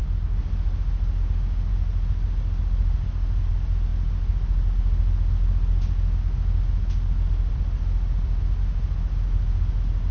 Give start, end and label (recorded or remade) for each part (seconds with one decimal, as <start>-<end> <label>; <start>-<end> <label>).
0.0-10.1 recorded